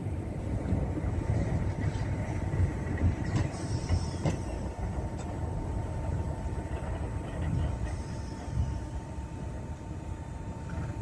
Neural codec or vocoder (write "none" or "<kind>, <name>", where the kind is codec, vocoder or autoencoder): vocoder, BigVGAN v2